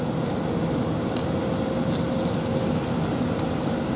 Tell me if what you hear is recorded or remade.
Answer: recorded